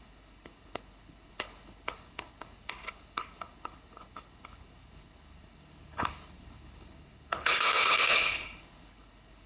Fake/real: fake